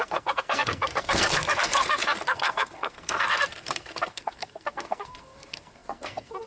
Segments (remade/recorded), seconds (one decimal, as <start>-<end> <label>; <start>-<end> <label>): 0.0-6.5 remade